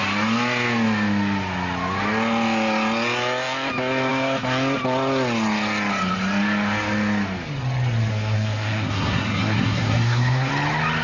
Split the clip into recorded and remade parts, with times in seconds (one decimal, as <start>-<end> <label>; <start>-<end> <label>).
0.0-8.1 recorded; 8.1-10.5 remade; 10.5-11.0 recorded